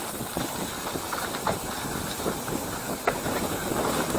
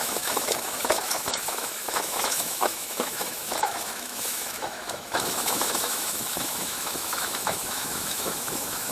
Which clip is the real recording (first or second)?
first